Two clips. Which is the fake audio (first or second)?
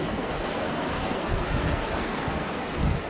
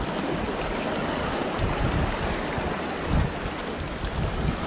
first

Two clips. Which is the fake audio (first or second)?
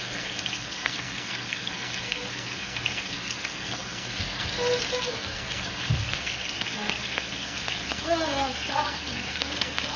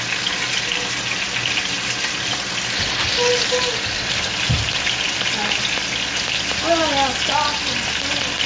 first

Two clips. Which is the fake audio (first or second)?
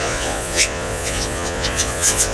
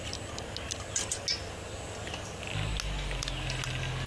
first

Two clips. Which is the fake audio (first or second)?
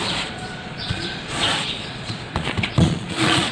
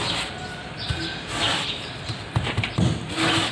first